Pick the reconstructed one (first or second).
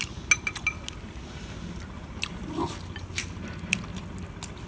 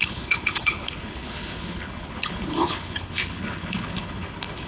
second